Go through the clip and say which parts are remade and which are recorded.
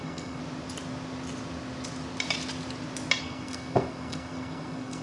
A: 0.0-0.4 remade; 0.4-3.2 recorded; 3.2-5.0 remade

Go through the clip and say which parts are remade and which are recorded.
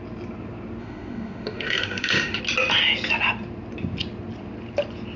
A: 0.0-0.8 recorded; 0.8-2.4 remade; 2.4-5.2 recorded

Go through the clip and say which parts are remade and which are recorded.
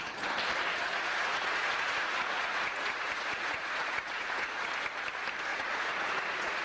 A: 0.0-0.7 recorded; 0.7-4.7 remade; 4.7-5.5 recorded; 5.5-6.6 remade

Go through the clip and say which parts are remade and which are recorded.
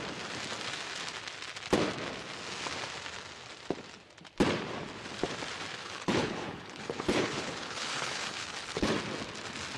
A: 0.0-5.8 recorded; 5.8-8.9 remade; 8.9-9.8 recorded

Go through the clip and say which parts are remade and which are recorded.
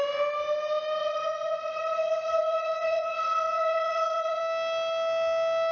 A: 0.0-1.0 recorded; 1.0-4.4 remade; 4.4-5.7 recorded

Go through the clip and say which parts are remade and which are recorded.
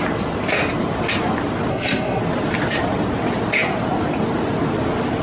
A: 0.0-1.7 recorded; 1.7-2.2 remade; 2.2-5.2 recorded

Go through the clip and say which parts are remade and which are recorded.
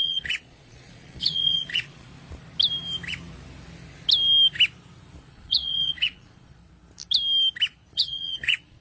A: 0.0-2.1 remade; 2.1-5.2 recorded; 5.2-6.6 remade; 6.6-7.9 recorded; 7.9-8.8 remade